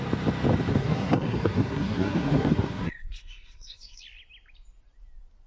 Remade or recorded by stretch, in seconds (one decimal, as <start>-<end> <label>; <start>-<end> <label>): 0.0-0.7 recorded; 0.7-4.0 remade; 4.0-5.5 recorded